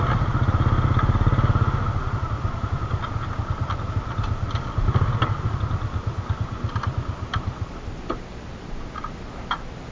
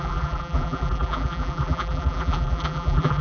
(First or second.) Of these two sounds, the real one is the first